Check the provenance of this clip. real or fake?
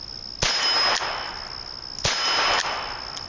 real